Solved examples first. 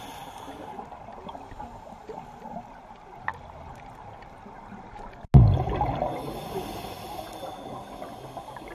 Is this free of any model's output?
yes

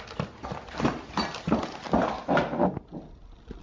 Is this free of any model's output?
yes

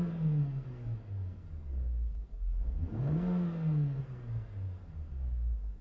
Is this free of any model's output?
no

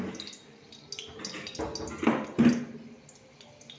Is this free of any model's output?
yes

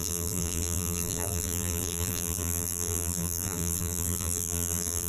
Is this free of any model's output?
no